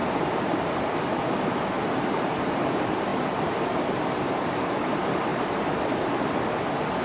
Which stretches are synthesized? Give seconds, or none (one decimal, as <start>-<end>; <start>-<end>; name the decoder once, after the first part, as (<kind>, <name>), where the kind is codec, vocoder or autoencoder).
3.1-4.7 (vocoder, BigVGAN v2); 5.3-5.8